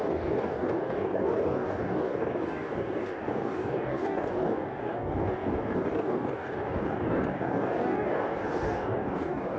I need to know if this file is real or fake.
fake